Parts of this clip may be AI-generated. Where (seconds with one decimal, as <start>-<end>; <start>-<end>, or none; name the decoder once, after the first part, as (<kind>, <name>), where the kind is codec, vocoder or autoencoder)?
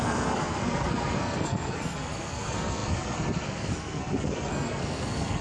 0.0-5.4 (codec, SNAC)